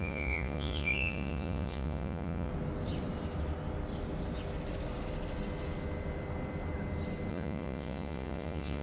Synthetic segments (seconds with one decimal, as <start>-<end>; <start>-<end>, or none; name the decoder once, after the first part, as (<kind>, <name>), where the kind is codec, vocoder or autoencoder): 0.0-2.5 (vocoder, Vocos); 7.3-8.8